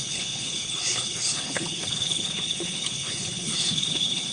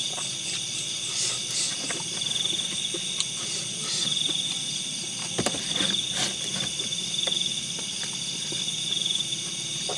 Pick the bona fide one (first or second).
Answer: second